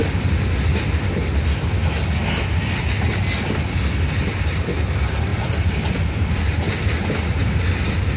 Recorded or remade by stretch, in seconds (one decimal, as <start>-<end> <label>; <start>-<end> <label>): 0.0-8.2 recorded